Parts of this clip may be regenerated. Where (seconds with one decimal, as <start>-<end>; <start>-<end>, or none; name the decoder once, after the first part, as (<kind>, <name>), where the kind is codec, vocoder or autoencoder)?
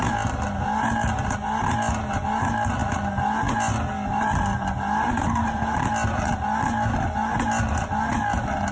none